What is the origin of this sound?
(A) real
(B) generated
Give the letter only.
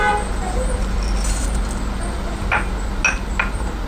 A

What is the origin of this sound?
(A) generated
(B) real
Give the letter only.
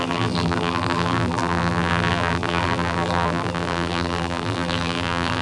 A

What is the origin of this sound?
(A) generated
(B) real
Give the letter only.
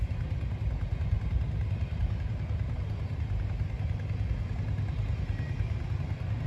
B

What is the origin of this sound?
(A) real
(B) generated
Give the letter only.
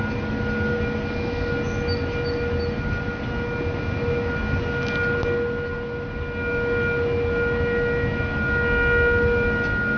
A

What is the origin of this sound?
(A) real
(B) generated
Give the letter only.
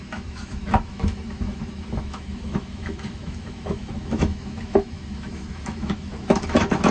B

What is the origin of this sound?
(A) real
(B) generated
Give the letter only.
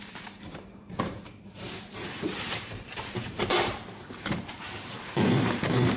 B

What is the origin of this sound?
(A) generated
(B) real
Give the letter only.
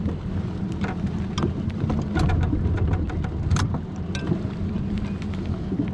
B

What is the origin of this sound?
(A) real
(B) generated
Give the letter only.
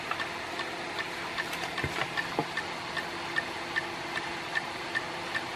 A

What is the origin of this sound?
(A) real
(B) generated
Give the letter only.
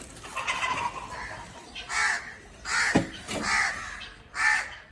A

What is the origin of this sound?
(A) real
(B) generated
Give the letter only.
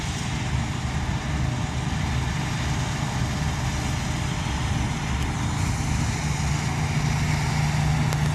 A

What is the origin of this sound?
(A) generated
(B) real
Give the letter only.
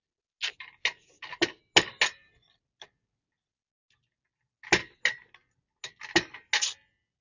B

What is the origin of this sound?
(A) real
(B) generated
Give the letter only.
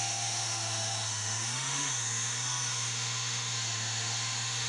B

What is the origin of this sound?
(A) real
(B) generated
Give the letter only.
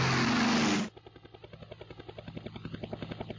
A